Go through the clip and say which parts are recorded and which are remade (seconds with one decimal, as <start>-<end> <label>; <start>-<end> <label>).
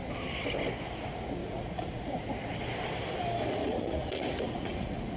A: 0.0-1.4 recorded; 1.4-2.3 remade; 2.3-3.6 recorded; 3.6-5.2 remade